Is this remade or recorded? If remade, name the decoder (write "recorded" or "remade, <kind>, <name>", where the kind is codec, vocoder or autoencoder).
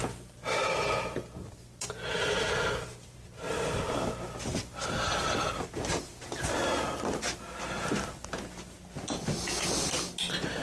recorded